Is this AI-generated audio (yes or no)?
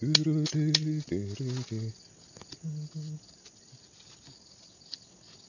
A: no